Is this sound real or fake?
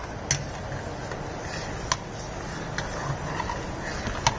real